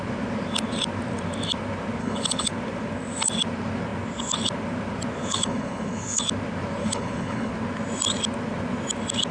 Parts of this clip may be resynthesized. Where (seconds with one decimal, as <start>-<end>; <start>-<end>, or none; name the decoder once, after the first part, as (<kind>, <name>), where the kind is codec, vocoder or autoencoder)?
2.0-2.5 (codec, HILCodec); 5.2-6.2; 6.8-7.5